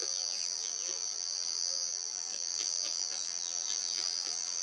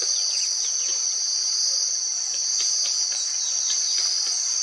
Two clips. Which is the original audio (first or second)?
second